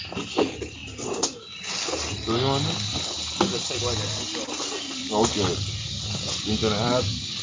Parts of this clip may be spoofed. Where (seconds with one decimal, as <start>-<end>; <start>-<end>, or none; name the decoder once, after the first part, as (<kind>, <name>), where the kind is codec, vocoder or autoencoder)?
none